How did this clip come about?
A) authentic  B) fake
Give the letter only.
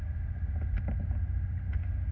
A